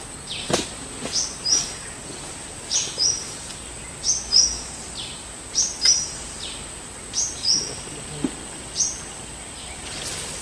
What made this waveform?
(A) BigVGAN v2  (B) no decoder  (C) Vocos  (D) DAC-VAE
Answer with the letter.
B